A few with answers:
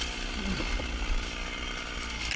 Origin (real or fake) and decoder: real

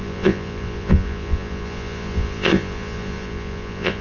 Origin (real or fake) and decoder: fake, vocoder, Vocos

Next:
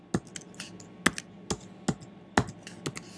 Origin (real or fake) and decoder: real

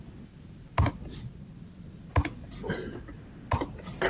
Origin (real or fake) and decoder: real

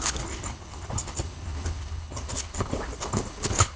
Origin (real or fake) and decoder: fake, codec, HILCodec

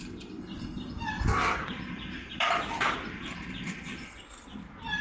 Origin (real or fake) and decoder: real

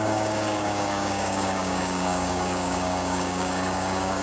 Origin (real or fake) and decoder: fake, codec, DAC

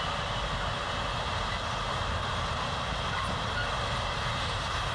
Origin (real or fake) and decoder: real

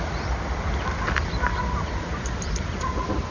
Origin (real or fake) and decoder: fake, vocoder, BigVGAN v2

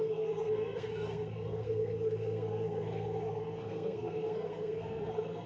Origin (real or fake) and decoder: fake, codec, SNAC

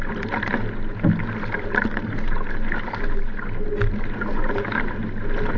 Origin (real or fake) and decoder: real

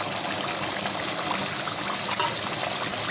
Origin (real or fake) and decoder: real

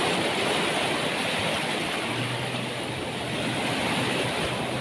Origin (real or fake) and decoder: real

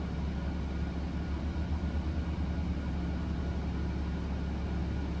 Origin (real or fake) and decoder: real